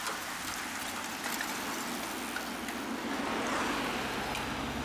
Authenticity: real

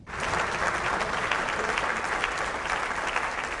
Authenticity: real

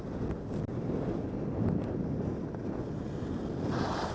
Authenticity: real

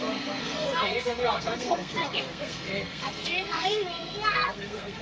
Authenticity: fake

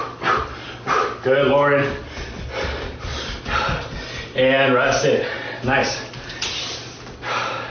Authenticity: real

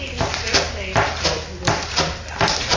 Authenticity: real